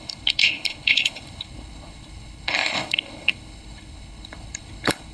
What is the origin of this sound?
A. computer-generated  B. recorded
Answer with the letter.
A